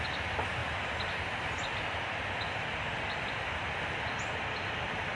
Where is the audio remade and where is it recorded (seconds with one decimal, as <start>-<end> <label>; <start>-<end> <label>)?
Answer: 0.0-5.2 recorded